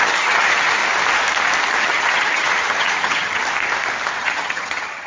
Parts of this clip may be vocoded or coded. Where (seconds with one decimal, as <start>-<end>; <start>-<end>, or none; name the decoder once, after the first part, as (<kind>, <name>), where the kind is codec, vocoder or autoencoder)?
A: 0.0-0.8 (vocoder, HiFi-GAN); 1.8-3.4; 4.2-5.1